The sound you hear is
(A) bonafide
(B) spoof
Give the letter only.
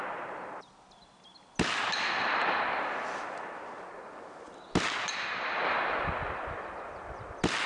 A